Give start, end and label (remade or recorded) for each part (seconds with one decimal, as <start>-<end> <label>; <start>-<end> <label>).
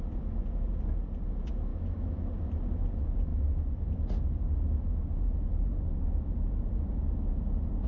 0.0-1.7 recorded; 1.7-2.2 remade; 2.2-7.9 recorded